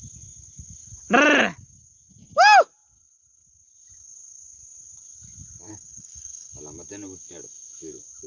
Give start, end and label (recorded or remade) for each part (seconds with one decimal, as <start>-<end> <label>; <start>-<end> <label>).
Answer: 0.0-5.7 recorded; 5.7-6.5 remade; 6.5-8.3 recorded